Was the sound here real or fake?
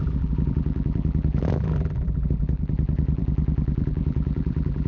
fake